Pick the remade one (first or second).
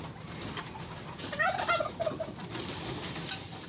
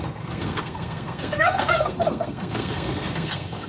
second